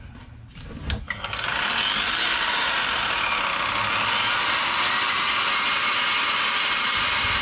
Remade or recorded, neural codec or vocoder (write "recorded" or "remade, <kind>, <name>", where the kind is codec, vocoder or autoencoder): recorded